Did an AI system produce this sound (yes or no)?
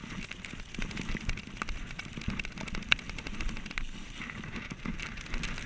no